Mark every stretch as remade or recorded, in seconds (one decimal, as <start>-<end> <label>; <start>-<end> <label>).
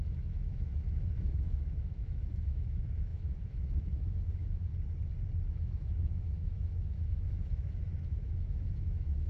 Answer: 0.0-4.7 remade; 4.7-5.5 recorded; 5.5-9.3 remade